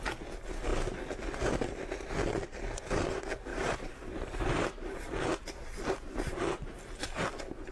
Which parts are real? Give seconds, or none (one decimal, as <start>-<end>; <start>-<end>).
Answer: 0.0-3.5; 6.3-7.7